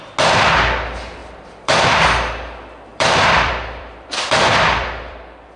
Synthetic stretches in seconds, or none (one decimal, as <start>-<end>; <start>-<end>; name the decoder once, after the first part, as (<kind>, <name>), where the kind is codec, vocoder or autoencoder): 1.2-2.3 (vocoder, BigVGAN v2); 2.9-5.6